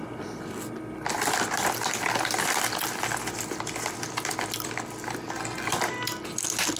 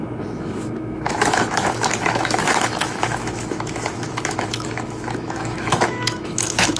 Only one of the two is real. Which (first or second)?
first